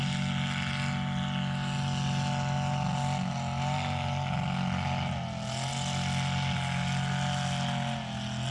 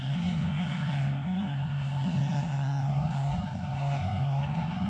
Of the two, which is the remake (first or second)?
second